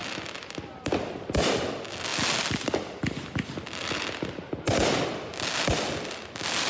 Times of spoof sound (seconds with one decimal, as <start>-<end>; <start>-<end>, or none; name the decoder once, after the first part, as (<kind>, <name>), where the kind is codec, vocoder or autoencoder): none